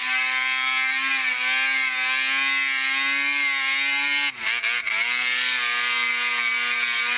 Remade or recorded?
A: recorded